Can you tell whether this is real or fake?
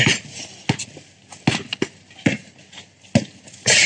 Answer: real